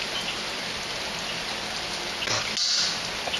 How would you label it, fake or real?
real